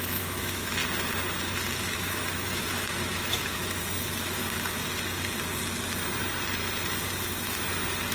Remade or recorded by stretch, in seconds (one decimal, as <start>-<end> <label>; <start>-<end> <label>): 0.0-0.8 remade; 0.8-1.8 recorded; 1.8-4.4 remade; 4.4-8.1 recorded